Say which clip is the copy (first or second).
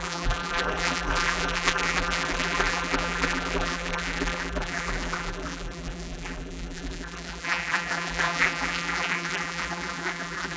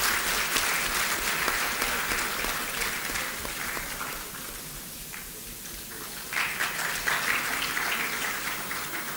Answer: first